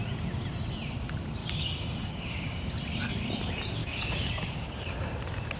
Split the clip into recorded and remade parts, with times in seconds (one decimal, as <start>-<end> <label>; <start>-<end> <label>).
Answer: 0.0-1.4 recorded; 1.4-2.6 remade; 2.6-3.8 recorded; 3.8-4.9 remade; 4.9-5.6 recorded